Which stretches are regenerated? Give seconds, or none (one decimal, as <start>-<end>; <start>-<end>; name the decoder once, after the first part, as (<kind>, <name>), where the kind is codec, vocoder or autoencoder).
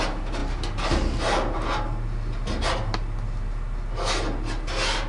none